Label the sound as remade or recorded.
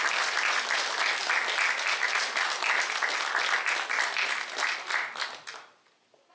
recorded